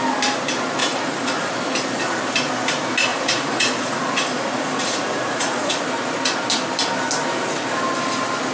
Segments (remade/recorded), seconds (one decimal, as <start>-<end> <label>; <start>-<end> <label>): 0.0-0.8 recorded; 0.8-1.5 remade; 1.5-3.1 recorded; 3.1-5.8 remade; 5.8-8.5 recorded